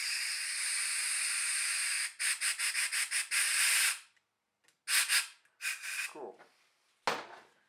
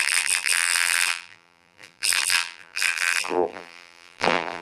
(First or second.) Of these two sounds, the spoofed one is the second